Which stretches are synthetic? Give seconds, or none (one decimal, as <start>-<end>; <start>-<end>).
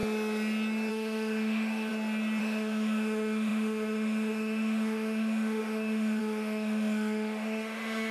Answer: 0.9-1.9; 2.4-8.1